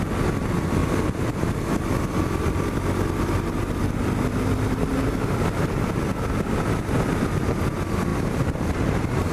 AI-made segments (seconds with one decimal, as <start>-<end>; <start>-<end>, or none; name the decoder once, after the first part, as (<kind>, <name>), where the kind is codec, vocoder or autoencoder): none